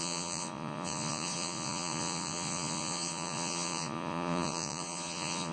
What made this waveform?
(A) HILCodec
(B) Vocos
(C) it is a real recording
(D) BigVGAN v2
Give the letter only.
B